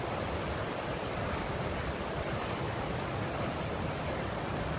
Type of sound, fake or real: real